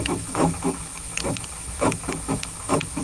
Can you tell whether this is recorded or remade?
remade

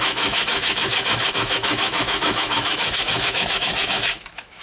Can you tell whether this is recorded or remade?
remade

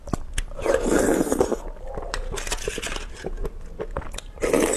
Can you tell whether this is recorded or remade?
recorded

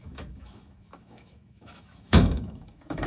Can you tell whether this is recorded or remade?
remade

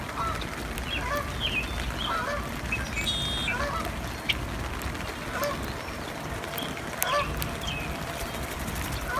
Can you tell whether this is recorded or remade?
recorded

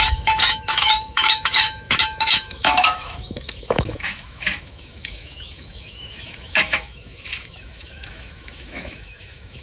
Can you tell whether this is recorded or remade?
remade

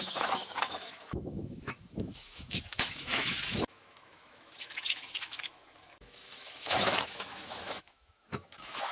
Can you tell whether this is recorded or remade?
remade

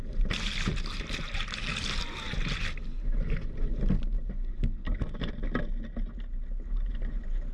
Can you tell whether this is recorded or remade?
recorded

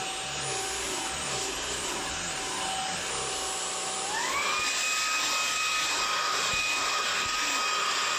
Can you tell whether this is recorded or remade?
recorded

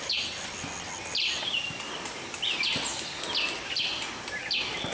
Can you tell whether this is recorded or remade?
recorded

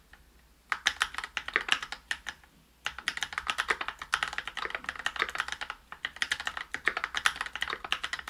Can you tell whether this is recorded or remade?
recorded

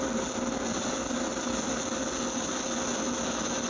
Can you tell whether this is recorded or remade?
recorded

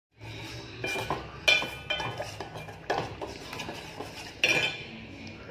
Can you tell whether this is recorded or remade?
recorded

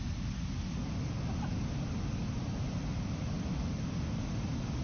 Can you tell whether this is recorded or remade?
recorded